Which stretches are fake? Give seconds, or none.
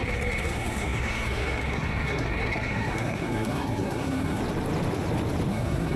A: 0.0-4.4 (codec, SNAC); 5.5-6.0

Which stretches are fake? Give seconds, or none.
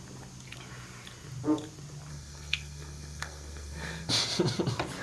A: 2.1-4.1 (codec, SNAC)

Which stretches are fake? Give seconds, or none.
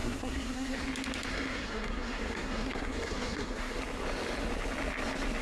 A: 0.0-0.8 (codec, SNAC); 1.3-3.8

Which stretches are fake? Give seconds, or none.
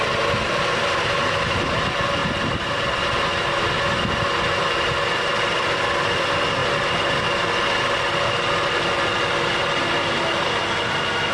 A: none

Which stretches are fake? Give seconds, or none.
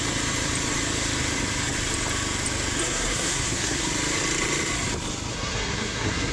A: 2.8-3.9 (codec, SNAC); 5.3-6.3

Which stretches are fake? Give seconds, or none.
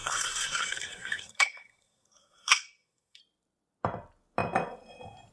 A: 0.0-3.2 (codec, SNAC)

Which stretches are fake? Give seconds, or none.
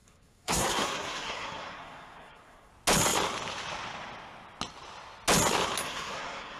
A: 0.0-2.7 (codec, SNAC); 5.8-6.6